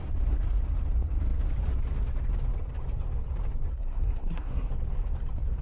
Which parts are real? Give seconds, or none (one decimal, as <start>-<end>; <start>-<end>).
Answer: 0.0-3.7; 4.7-5.6